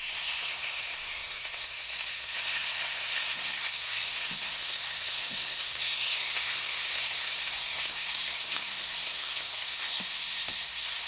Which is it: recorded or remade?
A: remade